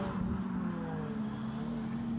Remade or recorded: recorded